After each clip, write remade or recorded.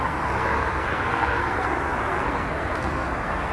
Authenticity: remade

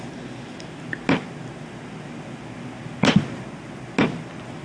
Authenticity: recorded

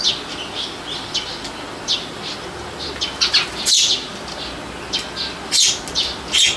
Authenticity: recorded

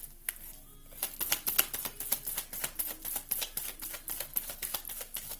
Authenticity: recorded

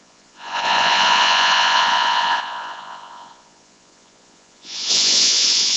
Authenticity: remade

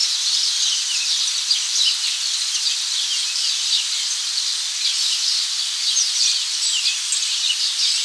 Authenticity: recorded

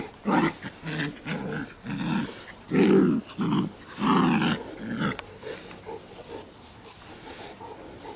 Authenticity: recorded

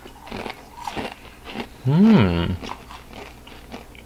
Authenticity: recorded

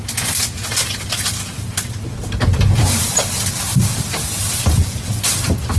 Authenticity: recorded